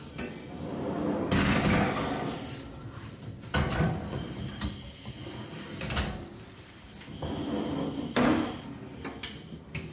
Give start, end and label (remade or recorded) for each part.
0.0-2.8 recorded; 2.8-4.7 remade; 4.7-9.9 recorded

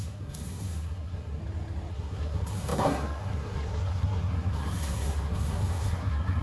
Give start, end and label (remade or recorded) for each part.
0.0-1.4 remade; 1.4-1.9 recorded; 1.9-6.4 remade

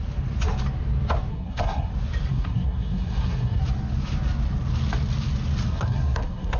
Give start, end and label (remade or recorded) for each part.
0.0-1.3 recorded; 1.3-1.9 remade; 1.9-2.3 recorded; 2.3-3.6 remade; 3.6-5.7 recorded; 5.7-6.6 remade

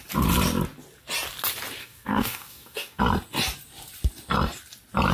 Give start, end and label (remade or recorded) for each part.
0.0-1.8 recorded; 1.8-3.0 remade; 3.0-5.1 recorded

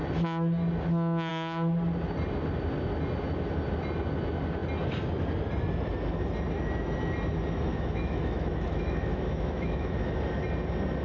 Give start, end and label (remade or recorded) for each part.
0.0-7.7 recorded; 7.7-10.2 remade; 10.2-11.0 recorded

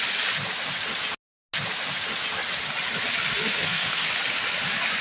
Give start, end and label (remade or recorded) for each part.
0.0-3.5 recorded; 3.5-4.1 remade; 4.1-5.0 recorded